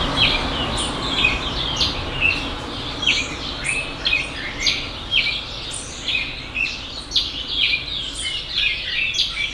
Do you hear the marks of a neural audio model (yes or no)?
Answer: no